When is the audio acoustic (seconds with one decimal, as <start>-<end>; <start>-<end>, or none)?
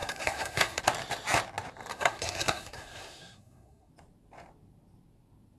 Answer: 0.8-1.9; 3.9-5.6